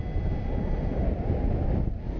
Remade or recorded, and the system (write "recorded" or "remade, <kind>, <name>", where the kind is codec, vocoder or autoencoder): recorded